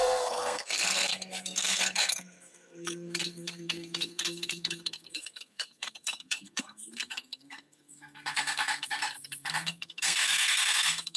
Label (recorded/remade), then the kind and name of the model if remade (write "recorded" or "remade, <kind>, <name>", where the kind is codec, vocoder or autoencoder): remade, codec, SNAC